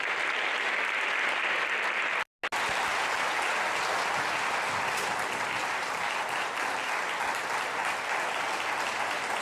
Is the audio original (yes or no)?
yes